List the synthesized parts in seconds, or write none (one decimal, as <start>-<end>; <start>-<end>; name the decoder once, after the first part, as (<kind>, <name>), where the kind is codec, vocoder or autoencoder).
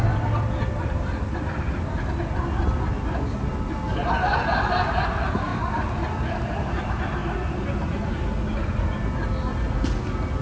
none